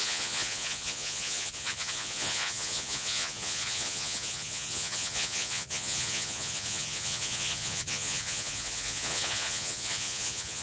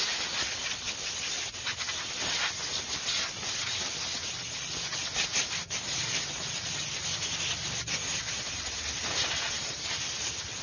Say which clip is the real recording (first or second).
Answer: second